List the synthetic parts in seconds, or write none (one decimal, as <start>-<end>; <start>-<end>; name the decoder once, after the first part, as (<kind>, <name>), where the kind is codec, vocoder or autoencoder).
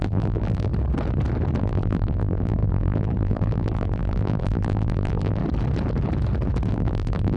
0.0-0.7 (vocoder, BigVGAN v2); 1.6-5.4; 6.7-7.4